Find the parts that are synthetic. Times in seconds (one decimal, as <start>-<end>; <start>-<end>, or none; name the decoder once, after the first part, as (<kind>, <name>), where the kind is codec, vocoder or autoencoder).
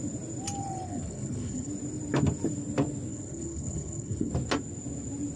0.6-1.7 (codec, HILCodec); 3.1-4.3